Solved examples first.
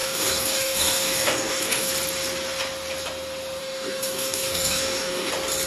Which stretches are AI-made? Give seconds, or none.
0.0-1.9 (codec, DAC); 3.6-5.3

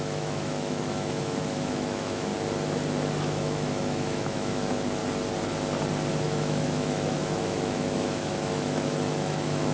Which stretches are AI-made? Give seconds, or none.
0.0-2.3 (autoencoder, DAC-VAE); 3.2-5.0; 6.1-9.7

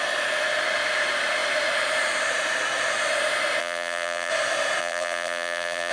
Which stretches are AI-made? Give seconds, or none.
3.6-4.3 (vocoder, BigVGAN v2); 4.8-5.9

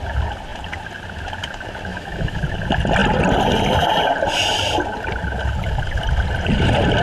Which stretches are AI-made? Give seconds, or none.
1.9-2.4 (autoencoder, DAC-VAE)

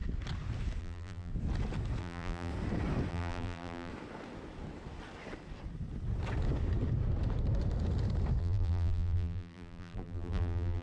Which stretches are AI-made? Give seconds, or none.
0.8-1.3 (vocoder, BigVGAN v2); 2.0-2.5; 3.1-3.9; 8.4-10.8

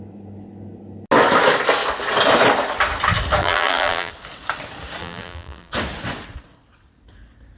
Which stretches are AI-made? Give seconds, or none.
3.4-4.1 (vocoder, BigVGAN v2); 5.0-5.7

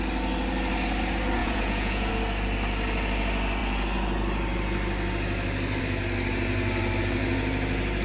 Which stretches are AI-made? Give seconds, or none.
1.4-2.1 (vocoder, Vocos)